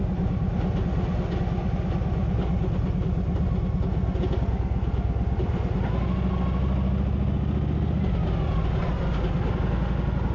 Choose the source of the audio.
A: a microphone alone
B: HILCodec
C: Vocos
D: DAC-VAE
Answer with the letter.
A